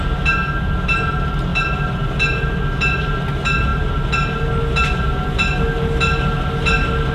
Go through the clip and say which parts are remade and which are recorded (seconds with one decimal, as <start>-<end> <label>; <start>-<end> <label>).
0.0-7.1 recorded